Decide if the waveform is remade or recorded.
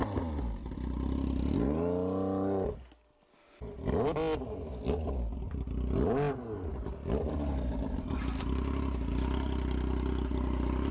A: recorded